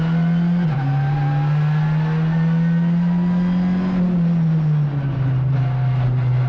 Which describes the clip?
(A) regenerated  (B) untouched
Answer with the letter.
B